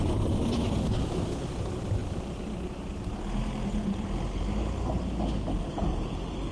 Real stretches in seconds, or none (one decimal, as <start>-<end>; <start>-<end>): 0.0-6.5